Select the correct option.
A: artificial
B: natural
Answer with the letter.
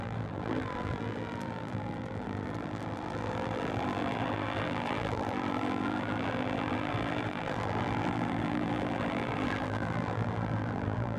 A